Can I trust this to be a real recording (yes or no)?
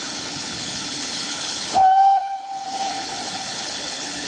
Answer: no